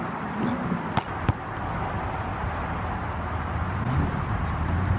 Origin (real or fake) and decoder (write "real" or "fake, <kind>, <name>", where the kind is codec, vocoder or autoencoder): real